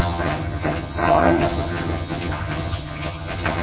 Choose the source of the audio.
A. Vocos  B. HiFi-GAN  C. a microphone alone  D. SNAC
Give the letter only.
B